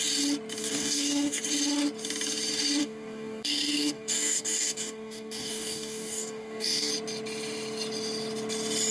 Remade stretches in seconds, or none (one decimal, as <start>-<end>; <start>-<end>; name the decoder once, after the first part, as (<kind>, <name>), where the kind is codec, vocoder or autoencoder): 0.6-1.4 (codec, DAC); 2.8-6.9